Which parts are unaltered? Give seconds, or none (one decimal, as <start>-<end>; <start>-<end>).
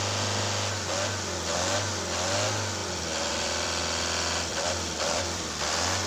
0.0-2.8; 3.8-4.5; 5.6-6.1